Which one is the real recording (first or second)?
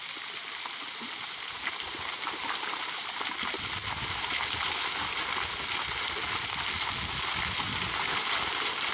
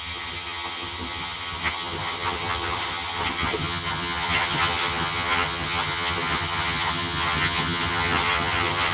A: first